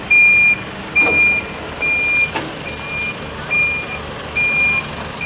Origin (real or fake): real